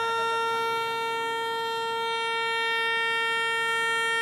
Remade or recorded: recorded